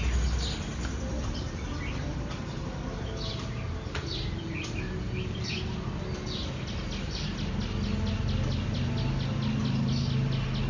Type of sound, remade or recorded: recorded